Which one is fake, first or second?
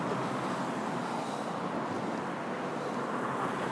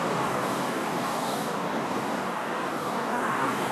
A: second